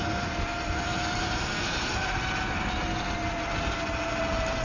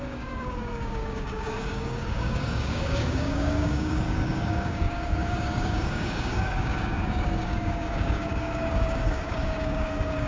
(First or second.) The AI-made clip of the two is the second